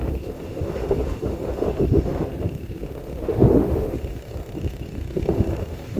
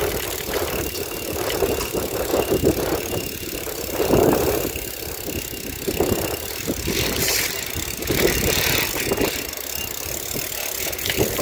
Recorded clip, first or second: second